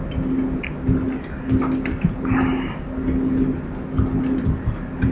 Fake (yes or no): no